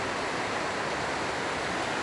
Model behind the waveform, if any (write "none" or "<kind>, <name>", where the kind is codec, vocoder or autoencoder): vocoder, BigVGAN v2